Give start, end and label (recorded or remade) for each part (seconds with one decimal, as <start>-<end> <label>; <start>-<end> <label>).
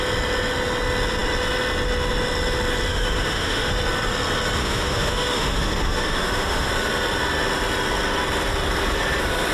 0.0-2.9 recorded; 2.9-3.7 remade; 3.7-4.6 recorded; 4.6-6.7 remade; 6.7-9.5 recorded